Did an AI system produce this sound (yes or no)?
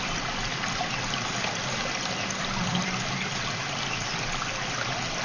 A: no